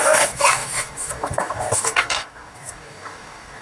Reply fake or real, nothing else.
fake